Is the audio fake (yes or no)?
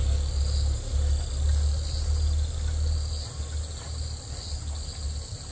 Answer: no